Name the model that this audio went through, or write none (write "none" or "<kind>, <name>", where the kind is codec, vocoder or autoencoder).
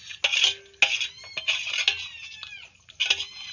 none